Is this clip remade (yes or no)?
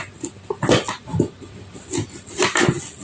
no